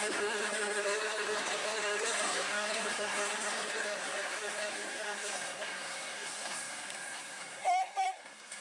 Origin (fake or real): fake